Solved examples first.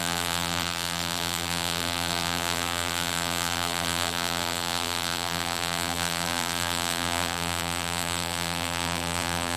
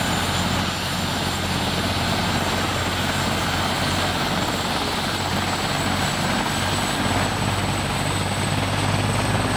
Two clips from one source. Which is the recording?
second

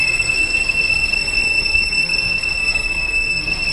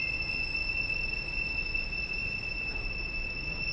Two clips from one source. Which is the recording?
second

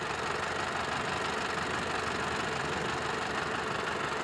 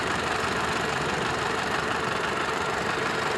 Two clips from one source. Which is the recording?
first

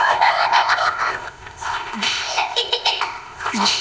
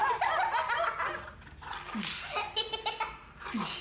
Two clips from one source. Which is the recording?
second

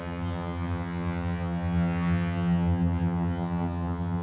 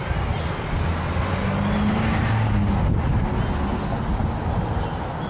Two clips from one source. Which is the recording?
second